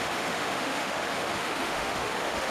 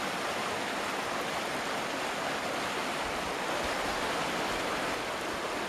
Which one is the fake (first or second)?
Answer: first